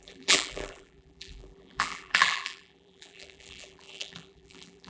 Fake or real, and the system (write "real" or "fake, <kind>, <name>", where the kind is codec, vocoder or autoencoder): fake, vocoder, BigVGAN v2